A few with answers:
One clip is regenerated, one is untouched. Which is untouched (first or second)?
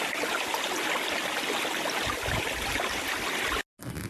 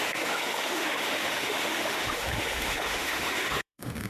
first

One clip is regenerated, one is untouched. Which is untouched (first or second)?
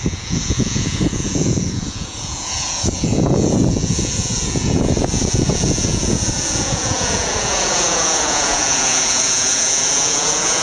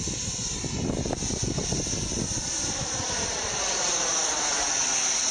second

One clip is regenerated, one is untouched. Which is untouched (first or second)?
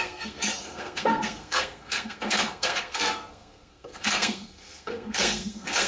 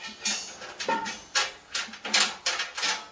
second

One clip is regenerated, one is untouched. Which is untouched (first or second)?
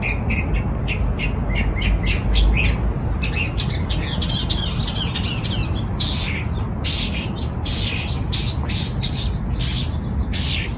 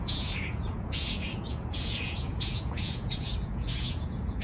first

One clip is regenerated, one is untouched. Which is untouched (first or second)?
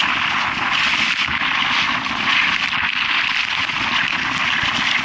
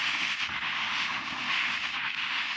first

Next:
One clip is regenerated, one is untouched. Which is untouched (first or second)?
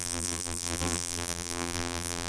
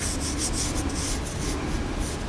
second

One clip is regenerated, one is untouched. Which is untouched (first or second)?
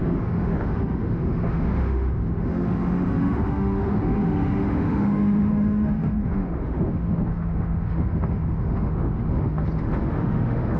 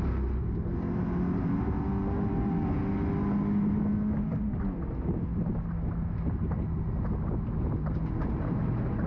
second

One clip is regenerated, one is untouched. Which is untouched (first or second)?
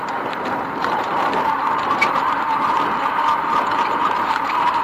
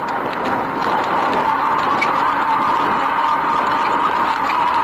second